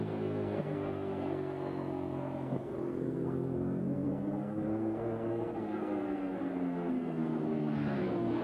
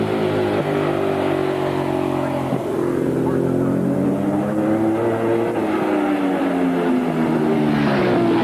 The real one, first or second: second